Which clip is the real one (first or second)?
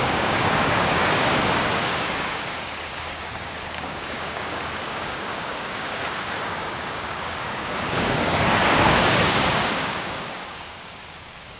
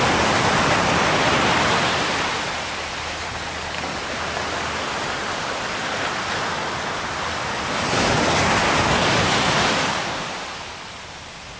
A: second